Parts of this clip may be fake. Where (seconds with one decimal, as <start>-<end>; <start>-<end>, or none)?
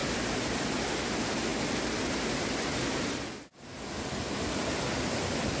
0.0-0.6